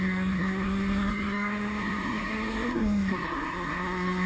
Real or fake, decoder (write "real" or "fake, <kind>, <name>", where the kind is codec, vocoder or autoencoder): fake, codec, SNAC